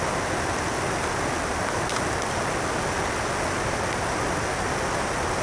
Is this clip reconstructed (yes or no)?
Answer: no